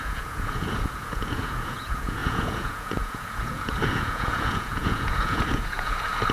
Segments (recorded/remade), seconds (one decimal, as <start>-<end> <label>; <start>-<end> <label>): 0.0-6.3 remade